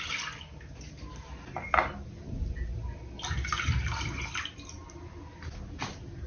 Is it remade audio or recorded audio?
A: recorded